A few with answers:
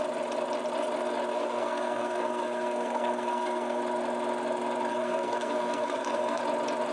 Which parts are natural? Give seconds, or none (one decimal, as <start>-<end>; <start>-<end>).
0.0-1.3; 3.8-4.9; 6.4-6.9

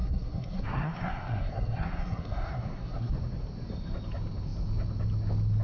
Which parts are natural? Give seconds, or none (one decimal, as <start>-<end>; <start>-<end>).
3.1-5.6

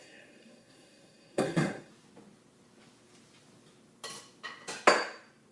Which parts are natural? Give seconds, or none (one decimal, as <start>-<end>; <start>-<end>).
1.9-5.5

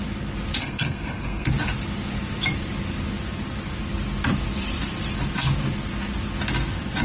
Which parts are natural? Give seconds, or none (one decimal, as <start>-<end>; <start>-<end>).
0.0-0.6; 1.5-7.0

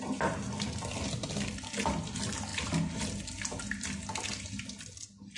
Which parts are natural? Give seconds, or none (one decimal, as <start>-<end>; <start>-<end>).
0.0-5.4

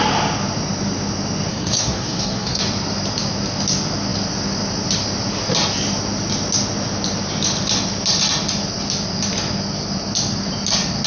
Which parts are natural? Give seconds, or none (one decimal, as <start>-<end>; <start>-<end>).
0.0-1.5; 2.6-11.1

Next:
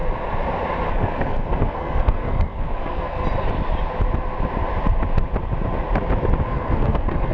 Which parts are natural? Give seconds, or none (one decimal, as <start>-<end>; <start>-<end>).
0.0-0.9; 3.2-6.4